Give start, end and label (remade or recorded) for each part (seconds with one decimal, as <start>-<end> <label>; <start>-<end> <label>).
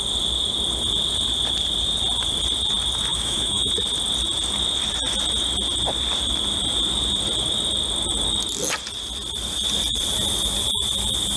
0.0-3.1 recorded; 3.1-3.7 remade; 3.7-11.4 recorded